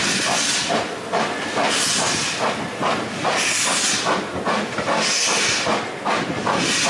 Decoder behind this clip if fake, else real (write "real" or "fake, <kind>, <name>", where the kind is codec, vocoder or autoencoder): real